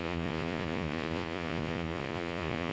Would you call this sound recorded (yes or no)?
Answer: no